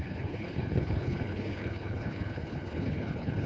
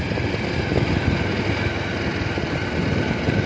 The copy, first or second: first